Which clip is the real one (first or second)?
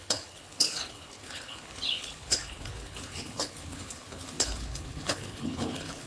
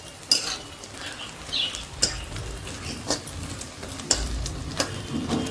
second